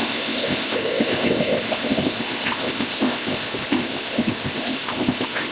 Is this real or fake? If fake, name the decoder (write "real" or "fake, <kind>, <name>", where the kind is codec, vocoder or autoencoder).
fake, codec, ZipCodec